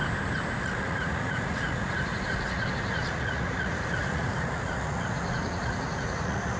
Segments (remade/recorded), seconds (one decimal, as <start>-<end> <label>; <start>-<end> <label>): 0.0-0.6 recorded; 0.6-6.6 remade